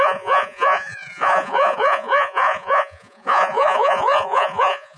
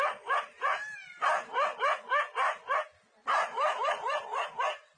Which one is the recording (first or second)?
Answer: second